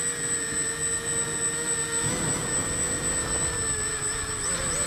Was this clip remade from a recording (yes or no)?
no